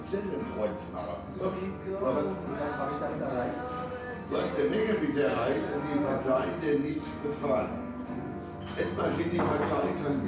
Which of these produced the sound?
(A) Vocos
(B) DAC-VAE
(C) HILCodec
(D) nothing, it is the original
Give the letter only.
D